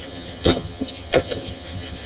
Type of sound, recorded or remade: remade